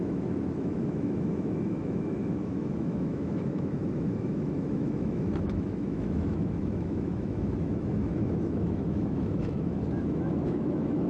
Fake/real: fake